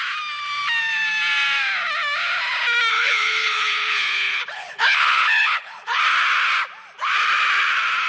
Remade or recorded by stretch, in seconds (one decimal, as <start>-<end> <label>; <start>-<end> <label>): 0.0-2.9 recorded; 2.9-6.0 remade; 6.0-8.1 recorded